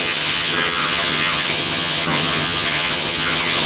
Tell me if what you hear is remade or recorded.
remade